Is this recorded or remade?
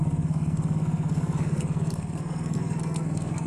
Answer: remade